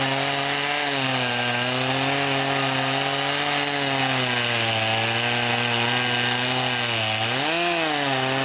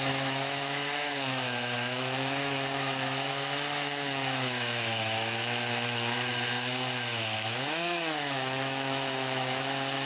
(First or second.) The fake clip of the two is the second